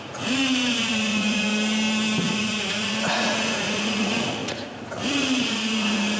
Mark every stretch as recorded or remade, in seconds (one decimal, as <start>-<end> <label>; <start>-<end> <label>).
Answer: 0.0-1.5 remade; 1.5-2.2 recorded; 2.2-6.2 remade